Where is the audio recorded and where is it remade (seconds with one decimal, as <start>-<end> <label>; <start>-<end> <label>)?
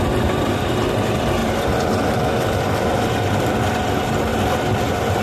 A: 0.0-5.2 recorded